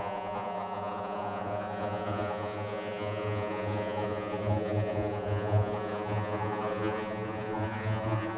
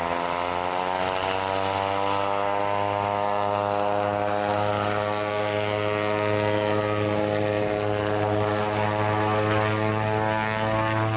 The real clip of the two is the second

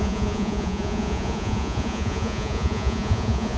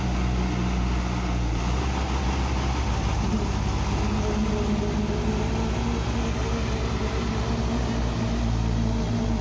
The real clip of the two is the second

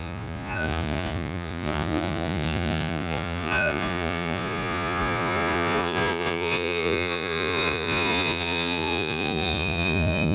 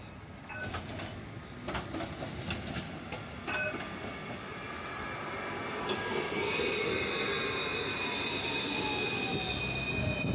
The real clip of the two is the second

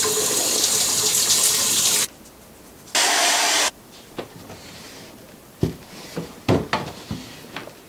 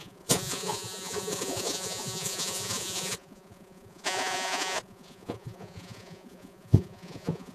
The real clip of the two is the first